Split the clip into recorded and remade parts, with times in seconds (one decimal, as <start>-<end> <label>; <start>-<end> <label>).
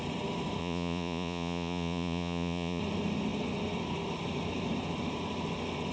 0.0-0.6 recorded; 0.6-2.8 remade; 2.8-5.9 recorded